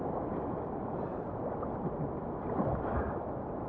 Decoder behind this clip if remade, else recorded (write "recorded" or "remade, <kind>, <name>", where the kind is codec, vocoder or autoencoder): recorded